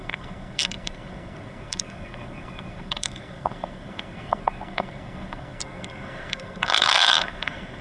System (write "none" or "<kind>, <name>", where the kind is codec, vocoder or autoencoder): codec, SNAC